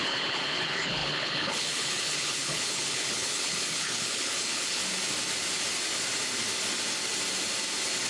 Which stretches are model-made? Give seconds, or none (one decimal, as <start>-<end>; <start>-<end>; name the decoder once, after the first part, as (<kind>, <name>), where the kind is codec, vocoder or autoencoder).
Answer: 0.0-4.8 (codec, HILCodec)